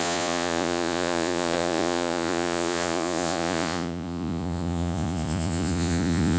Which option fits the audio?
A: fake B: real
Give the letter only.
A